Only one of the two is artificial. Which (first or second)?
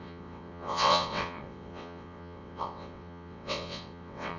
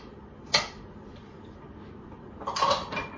first